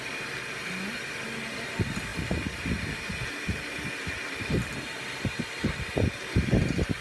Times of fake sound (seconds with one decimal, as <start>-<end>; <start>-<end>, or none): none